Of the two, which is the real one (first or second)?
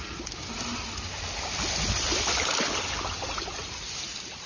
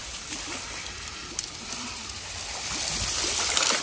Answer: first